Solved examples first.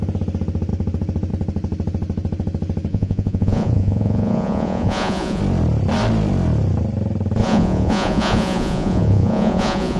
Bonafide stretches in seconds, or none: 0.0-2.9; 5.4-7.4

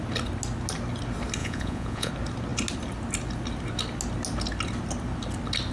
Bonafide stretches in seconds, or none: 0.0-1.4; 2.1-5.7

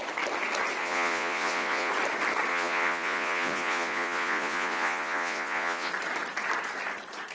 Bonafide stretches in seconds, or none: 0.0-0.8; 1.9-2.5; 5.9-7.3

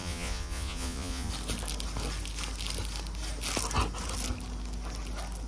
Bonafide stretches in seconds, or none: 1.3-5.5